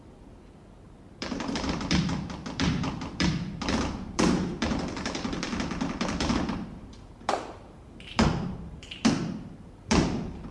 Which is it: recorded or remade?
remade